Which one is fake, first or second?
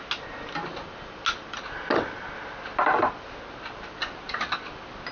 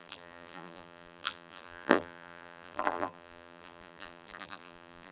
second